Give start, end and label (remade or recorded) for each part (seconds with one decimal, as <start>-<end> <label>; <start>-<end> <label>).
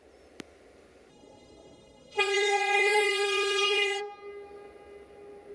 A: 0.0-1.1 recorded; 1.1-4.0 remade; 4.0-5.5 recorded